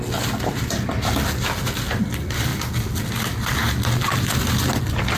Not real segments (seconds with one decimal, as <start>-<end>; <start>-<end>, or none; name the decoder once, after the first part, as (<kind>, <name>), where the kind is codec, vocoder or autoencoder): none